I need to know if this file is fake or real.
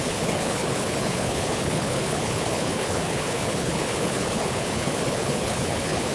fake